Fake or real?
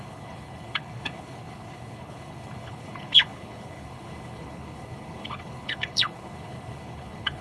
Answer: fake